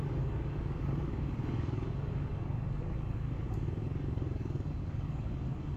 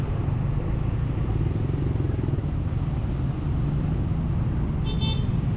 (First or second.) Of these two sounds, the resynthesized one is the first